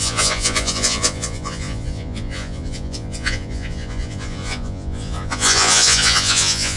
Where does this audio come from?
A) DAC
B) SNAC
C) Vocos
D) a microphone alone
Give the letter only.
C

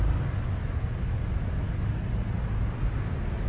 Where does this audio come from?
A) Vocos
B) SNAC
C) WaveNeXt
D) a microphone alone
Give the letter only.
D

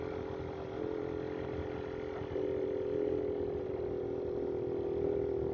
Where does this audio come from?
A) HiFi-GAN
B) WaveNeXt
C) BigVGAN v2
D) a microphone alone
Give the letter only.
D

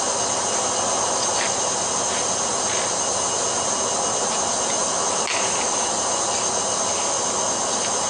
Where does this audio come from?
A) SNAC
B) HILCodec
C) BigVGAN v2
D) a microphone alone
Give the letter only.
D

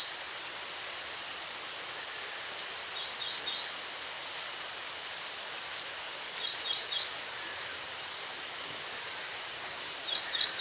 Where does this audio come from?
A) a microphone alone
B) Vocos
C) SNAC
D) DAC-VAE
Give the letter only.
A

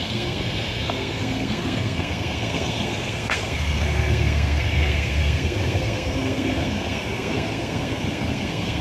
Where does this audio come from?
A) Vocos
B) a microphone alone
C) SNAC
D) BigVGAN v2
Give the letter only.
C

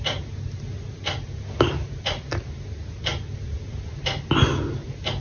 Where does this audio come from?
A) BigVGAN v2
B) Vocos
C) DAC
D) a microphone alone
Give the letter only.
D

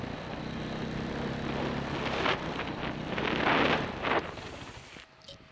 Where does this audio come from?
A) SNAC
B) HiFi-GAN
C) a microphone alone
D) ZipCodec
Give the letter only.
C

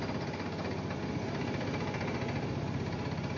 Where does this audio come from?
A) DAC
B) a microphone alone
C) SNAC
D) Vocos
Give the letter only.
B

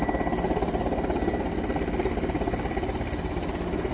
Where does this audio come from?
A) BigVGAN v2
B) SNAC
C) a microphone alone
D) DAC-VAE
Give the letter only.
C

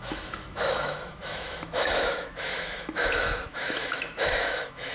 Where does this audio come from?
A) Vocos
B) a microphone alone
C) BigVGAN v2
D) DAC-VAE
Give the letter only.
D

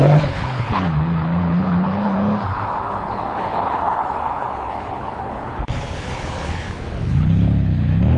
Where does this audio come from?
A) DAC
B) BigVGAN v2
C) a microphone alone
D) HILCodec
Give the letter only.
D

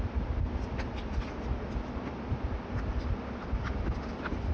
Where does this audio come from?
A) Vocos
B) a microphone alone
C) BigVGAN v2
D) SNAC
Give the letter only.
B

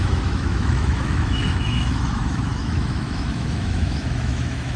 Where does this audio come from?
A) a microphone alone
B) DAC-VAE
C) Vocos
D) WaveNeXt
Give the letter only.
B